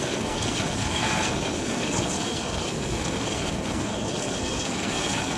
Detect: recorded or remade remade